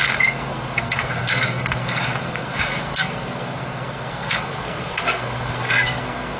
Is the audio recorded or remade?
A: remade